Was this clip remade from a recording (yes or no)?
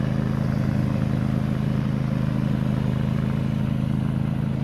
no